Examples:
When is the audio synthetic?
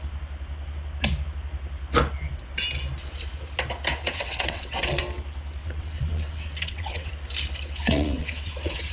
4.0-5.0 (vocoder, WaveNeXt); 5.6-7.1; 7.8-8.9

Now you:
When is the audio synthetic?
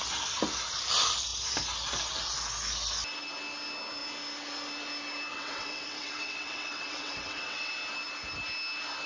5.3-7.7 (vocoder, WaveNeXt)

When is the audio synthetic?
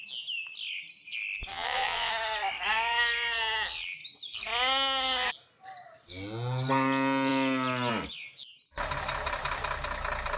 1.5-2.1 (vocoder, WaveNeXt)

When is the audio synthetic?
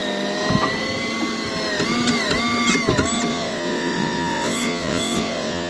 3.3-5.7 (vocoder, WaveNeXt)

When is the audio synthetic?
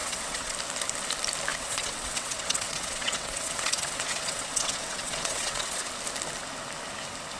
0.0-0.5 (vocoder, WaveNeXt); 1.5-5.9